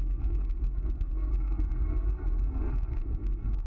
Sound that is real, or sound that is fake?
fake